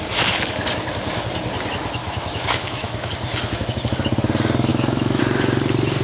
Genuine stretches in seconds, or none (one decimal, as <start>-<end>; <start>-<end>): 0.0-2.0; 3.1-4.7; 5.2-6.0